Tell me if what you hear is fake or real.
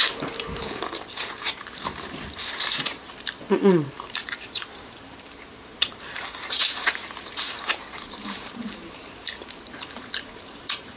fake